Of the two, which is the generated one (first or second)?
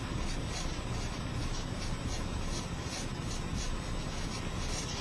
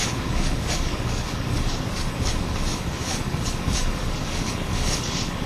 second